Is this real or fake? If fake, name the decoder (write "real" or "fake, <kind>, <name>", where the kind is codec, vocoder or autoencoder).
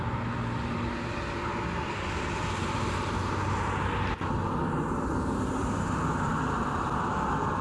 real